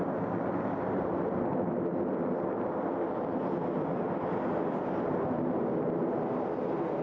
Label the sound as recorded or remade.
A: recorded